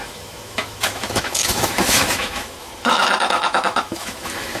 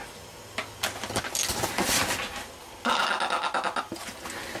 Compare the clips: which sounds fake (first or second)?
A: first